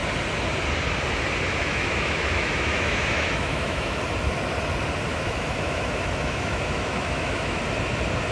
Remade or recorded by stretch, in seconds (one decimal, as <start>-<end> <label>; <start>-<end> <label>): 0.0-1.5 recorded; 1.5-4.0 remade; 4.0-5.1 recorded; 5.1-7.6 remade; 7.6-8.3 recorded